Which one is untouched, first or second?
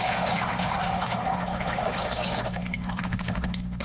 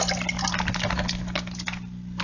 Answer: second